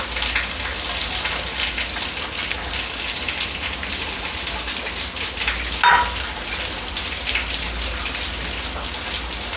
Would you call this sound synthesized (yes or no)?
no